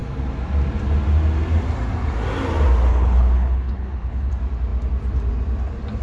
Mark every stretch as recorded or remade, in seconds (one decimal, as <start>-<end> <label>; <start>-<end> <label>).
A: 0.0-2.9 recorded; 2.9-4.3 remade; 4.3-6.0 recorded